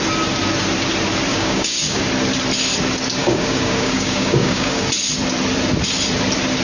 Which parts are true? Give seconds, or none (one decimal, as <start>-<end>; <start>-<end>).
0.0-1.3; 2.0-3.2; 4.9-6.6